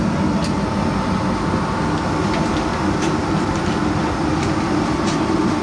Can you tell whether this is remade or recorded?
recorded